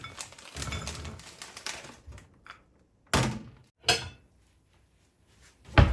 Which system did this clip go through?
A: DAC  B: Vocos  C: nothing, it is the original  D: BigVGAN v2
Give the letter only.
C